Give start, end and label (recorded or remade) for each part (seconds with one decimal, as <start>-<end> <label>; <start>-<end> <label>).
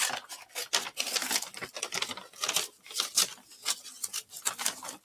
0.0-5.0 recorded